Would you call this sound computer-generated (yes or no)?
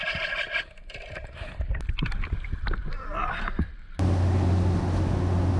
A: no